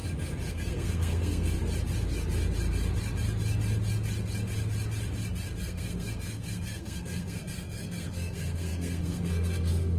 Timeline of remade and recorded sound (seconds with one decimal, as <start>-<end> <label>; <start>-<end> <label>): 0.0-0.5 recorded; 0.5-1.6 remade; 1.6-5.6 recorded; 5.6-10.0 remade